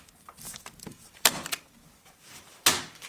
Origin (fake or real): fake